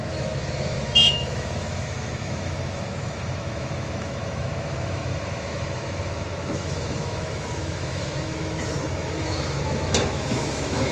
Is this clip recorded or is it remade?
remade